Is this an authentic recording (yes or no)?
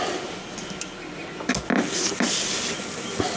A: yes